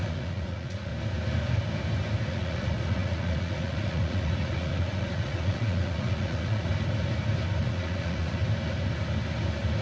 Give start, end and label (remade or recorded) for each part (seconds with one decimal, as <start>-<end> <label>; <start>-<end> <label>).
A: 0.0-0.9 remade; 0.9-2.3 recorded; 2.3-6.7 remade; 6.7-7.6 recorded; 7.6-8.4 remade; 8.4-9.8 recorded